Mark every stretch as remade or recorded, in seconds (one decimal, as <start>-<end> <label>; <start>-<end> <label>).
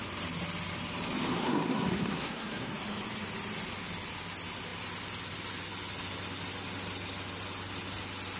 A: 0.0-1.3 recorded; 1.3-2.7 remade; 2.7-8.4 recorded